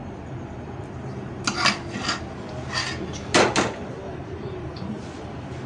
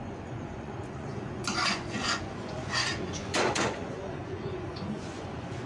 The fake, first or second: second